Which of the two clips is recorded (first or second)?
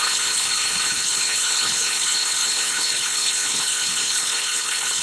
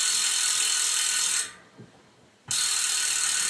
second